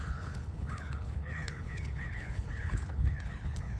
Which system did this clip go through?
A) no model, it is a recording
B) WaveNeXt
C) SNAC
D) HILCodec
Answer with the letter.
D